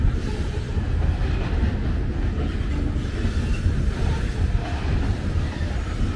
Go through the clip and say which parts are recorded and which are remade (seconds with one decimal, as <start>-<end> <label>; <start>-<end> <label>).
0.0-6.2 recorded